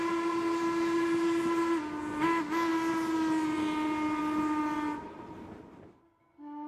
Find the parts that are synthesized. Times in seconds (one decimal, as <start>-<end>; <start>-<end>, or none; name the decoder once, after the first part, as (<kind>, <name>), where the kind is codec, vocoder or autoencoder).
none